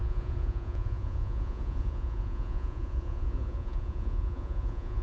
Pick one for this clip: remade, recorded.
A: remade